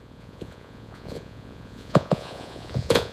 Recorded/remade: remade